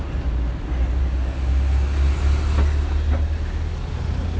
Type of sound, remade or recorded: recorded